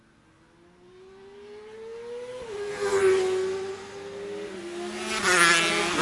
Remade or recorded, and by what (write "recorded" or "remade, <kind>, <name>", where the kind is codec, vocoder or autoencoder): recorded